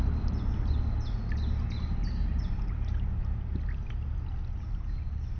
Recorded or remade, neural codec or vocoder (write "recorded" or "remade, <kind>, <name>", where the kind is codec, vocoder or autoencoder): recorded